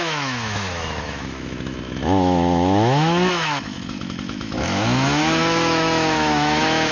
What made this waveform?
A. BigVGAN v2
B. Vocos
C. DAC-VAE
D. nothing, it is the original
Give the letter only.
C